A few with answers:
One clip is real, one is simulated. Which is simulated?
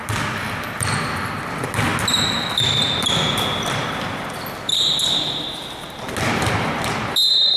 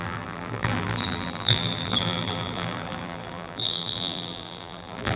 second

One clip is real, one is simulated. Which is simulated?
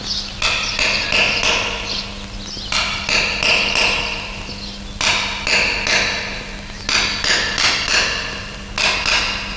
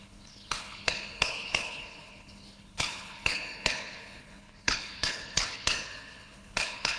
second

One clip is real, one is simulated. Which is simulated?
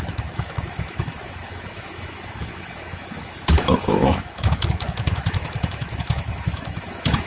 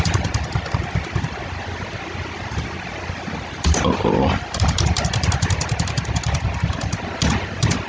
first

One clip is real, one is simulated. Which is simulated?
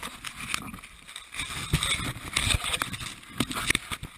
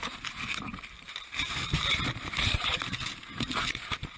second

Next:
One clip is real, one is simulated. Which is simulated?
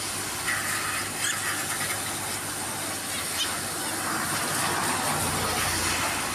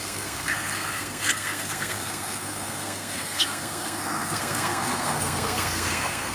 second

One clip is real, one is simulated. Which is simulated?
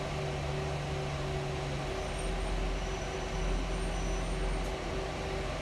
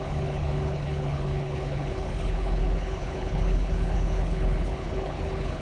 second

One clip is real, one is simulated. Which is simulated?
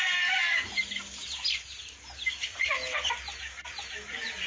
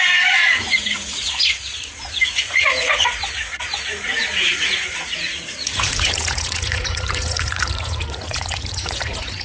second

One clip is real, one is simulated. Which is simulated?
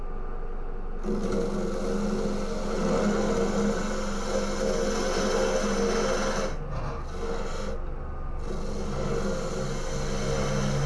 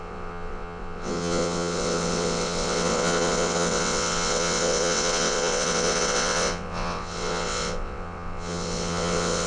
second